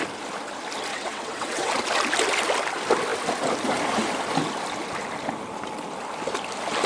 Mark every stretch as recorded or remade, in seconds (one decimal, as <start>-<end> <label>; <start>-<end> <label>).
0.0-0.9 recorded; 0.9-1.7 remade; 1.7-6.9 recorded

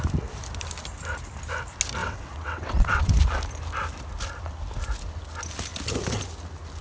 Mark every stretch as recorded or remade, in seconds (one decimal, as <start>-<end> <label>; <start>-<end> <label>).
0.0-2.0 recorded; 2.0-3.1 remade; 3.1-6.8 recorded

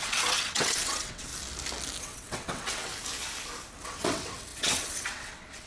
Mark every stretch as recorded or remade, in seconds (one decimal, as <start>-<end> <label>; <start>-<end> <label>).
0.0-1.3 remade; 1.3-2.0 recorded; 2.0-2.9 remade; 2.9-3.8 recorded; 3.8-5.7 remade

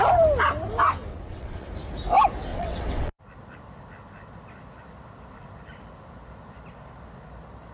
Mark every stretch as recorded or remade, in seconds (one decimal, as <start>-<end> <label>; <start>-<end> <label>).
0.0-1.1 recorded; 1.1-1.7 remade; 1.7-2.5 recorded; 2.5-3.2 remade; 3.2-7.7 recorded

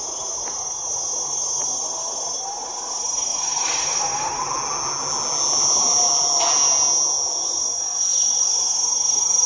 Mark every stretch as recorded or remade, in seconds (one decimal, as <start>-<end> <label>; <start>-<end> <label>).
0.0-9.5 recorded

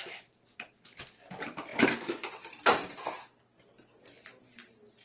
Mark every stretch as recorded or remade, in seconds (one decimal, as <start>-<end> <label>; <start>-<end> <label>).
0.0-5.0 recorded

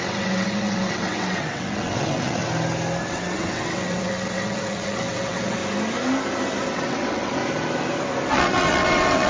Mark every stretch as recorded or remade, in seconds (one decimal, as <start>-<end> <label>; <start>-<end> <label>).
0.0-2.4 remade; 2.4-3.1 recorded; 3.1-5.6 remade; 5.6-6.7 recorded; 6.7-7.4 remade; 7.4-8.3 recorded; 8.3-9.3 remade

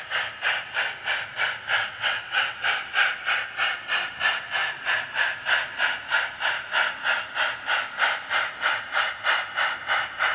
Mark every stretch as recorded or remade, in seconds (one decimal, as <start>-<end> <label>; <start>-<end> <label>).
0.0-1.9 recorded; 1.9-2.6 remade; 2.6-10.3 recorded